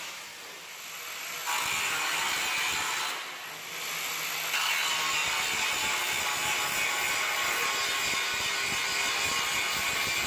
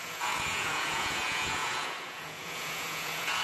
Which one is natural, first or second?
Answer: first